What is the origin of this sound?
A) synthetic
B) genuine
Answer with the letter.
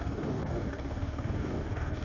A